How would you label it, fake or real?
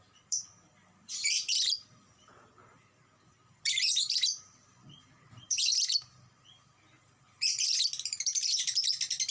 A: fake